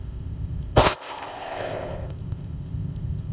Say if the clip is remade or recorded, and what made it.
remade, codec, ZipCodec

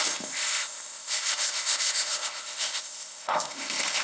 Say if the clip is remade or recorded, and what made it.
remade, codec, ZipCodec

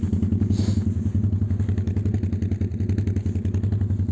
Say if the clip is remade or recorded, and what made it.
recorded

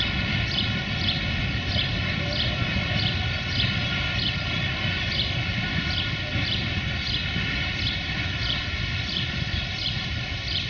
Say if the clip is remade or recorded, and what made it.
recorded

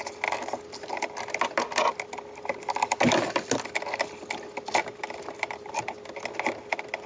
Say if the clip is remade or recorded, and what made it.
recorded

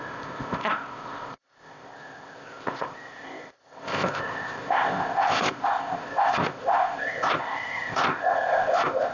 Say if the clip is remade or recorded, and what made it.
remade, codec, ZipCodec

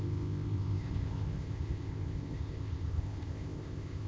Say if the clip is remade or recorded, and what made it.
remade, codec, ZipCodec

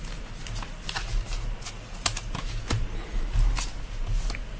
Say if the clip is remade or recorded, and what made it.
recorded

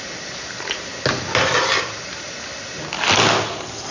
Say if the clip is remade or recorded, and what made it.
recorded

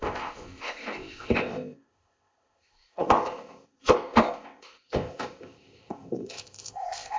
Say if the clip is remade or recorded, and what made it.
remade, codec, ZipCodec